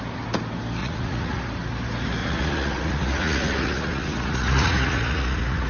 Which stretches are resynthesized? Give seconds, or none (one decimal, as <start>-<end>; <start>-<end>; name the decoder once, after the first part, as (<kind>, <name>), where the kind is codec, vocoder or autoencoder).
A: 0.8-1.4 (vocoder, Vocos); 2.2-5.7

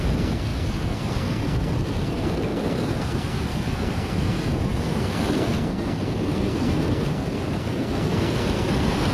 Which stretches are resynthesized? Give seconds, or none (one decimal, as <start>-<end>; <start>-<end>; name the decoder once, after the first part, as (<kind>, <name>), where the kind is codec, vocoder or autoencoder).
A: 0.0-9.1 (codec, SNAC)

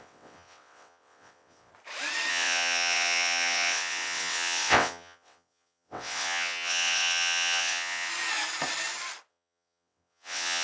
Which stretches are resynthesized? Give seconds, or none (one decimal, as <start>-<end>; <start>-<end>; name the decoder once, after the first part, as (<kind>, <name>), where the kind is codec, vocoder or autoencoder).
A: 0.0-1.7 (vocoder, WaveNeXt); 2.3-8.1; 9.3-10.6

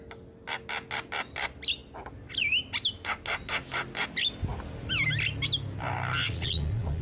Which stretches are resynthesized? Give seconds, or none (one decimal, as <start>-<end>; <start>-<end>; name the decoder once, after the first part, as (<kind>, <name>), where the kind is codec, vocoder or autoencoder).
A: 6.2-7.0 (vocoder, Vocos)

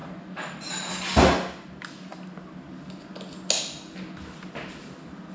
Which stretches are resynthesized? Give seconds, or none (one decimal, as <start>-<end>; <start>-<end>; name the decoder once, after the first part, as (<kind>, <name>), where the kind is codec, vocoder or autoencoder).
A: none

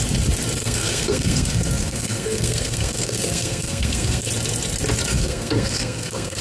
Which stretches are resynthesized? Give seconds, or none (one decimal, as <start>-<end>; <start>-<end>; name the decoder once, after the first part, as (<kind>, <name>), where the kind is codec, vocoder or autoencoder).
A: 0.6-4.3 (codec, SNAC); 5.1-6.4

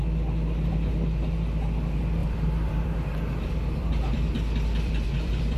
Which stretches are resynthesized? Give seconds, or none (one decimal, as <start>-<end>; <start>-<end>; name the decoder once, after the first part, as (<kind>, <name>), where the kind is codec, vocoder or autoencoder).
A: 2.2-5.6 (vocoder, BigVGAN v2)